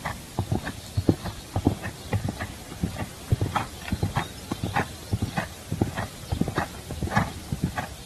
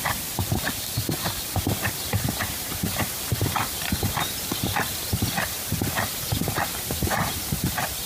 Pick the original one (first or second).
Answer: first